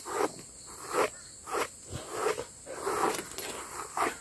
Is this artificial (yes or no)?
no